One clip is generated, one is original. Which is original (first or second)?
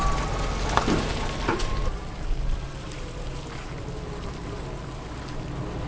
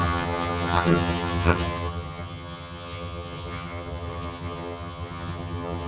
first